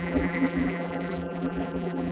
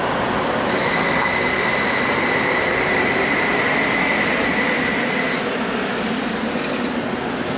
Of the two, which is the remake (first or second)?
first